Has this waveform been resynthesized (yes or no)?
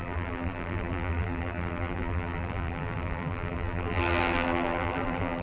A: yes